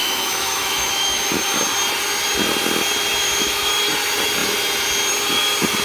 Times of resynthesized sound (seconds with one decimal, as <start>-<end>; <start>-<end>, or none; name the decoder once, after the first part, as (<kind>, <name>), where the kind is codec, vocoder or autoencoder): 0.0-1.3 (autoencoder, DAC-VAE); 3.2-3.7